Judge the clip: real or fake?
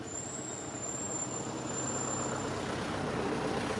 real